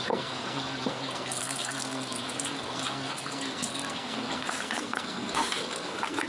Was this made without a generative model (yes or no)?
no